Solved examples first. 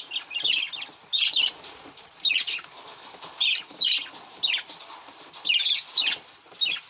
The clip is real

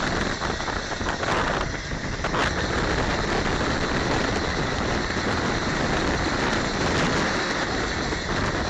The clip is real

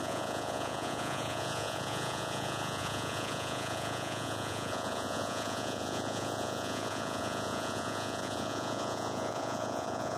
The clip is fake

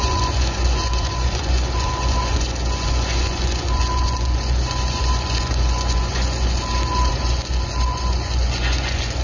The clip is fake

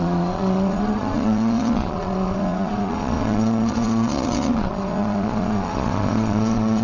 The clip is fake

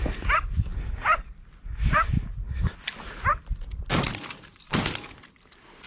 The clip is real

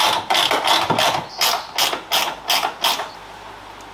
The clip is real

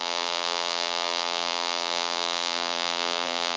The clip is fake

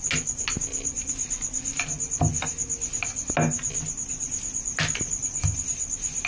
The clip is real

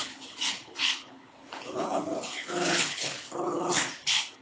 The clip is fake